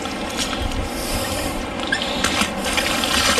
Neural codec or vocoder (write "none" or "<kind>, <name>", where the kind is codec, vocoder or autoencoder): none